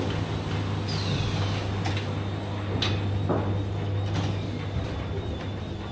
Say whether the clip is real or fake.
real